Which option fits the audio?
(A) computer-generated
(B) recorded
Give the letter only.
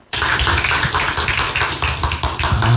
B